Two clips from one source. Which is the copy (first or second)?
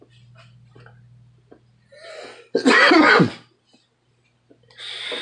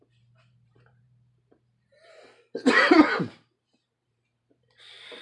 second